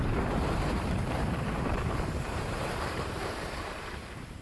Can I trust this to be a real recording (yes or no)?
no